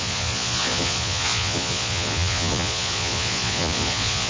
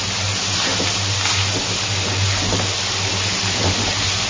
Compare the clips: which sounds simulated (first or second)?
first